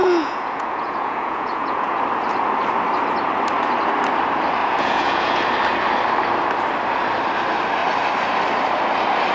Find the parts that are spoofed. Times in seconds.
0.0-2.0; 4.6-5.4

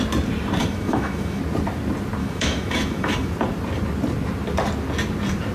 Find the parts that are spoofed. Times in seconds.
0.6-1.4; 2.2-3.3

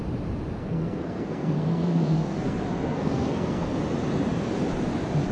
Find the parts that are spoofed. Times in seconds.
0.6-3.8

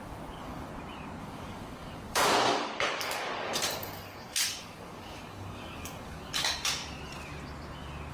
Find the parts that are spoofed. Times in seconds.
0.0-0.7; 1.2-6.8

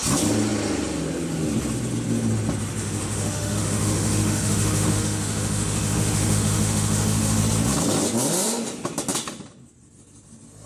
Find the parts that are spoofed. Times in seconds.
2.8-7.4

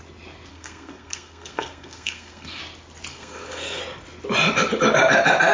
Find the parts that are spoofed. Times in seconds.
0.5-2.6; 3.1-3.8

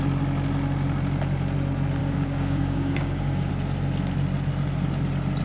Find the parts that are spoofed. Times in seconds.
2.0-3.5